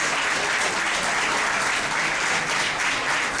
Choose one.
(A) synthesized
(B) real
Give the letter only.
B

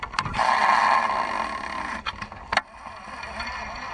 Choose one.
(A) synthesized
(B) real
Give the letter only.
B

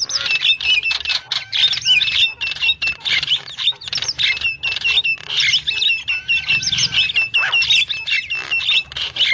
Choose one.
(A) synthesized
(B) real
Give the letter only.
B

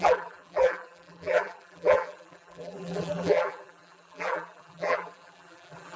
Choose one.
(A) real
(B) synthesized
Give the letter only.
B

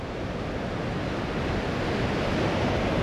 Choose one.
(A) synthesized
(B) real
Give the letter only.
B